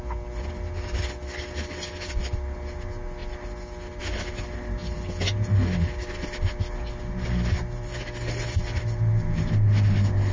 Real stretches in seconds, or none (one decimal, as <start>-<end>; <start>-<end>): 0.0-10.3